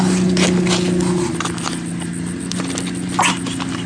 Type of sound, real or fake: real